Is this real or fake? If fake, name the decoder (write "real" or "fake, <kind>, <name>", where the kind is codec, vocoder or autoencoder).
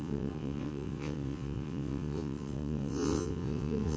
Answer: fake, vocoder, WaveNeXt